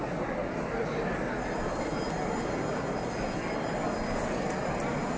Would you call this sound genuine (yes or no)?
yes